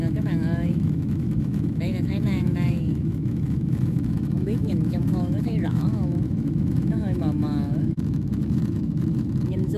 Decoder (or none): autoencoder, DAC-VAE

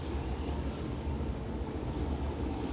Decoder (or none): codec, DAC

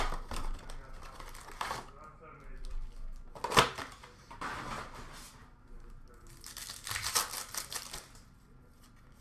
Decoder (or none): none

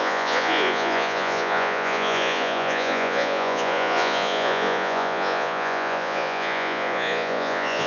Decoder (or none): vocoder, Vocos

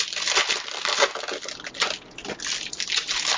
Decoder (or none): none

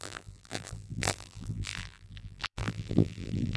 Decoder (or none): vocoder, BigVGAN v2